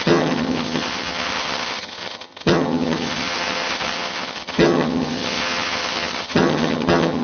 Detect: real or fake fake